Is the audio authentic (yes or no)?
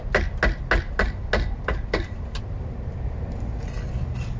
yes